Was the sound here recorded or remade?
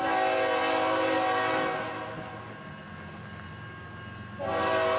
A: recorded